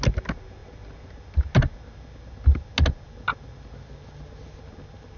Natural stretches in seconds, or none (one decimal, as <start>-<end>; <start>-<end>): 0.0-5.2